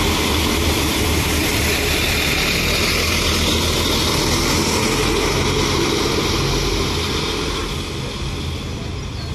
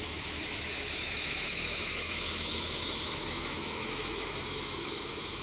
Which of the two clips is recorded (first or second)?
first